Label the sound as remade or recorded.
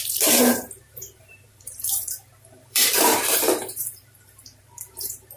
remade